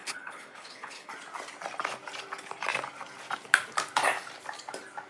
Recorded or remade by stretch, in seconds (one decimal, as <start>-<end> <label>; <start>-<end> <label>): 0.0-1.1 remade; 1.1-5.1 recorded